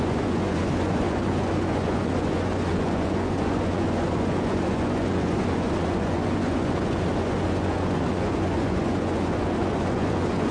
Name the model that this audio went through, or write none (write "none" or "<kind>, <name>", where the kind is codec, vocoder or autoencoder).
vocoder, Vocos